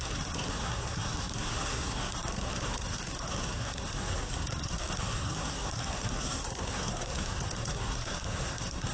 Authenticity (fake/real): fake